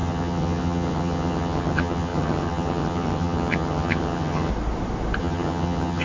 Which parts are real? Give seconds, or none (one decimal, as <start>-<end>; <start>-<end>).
4.5-5.2